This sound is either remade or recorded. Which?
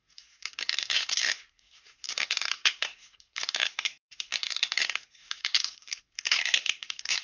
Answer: remade